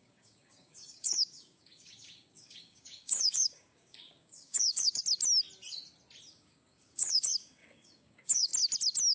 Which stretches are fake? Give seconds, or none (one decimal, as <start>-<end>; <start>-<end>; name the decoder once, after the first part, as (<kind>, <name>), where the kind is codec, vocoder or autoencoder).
0.0-5.0 (codec, DAC); 6.3-8.5